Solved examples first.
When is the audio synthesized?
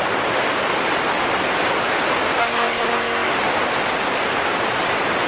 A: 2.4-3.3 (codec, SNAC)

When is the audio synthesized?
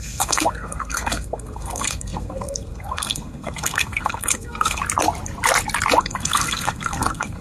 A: 0.0-4.8 (codec, SNAC); 6.0-7.4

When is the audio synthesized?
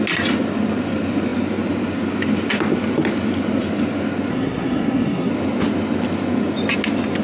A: 4.3-5.3 (codec, SNAC)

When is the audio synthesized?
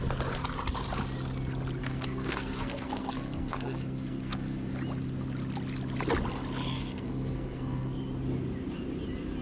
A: 1.8-4.7 (codec, SNAC); 6.7-8.0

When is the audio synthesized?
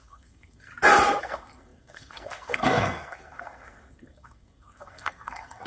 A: 0.0-0.7 (codec, SNAC); 1.2-5.7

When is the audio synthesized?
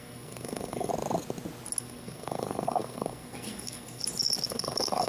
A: 0.0-0.9 (codec, SNAC); 1.8-4.0; 4.5-5.1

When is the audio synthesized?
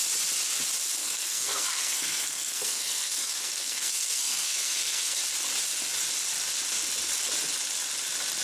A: 1.0-5.2 (codec, SNAC)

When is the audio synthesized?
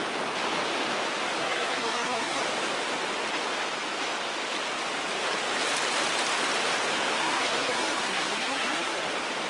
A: 1.4-2.4 (codec, SNAC); 7.2-9.0